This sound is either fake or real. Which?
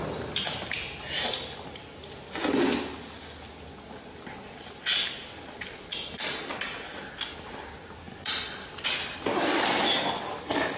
real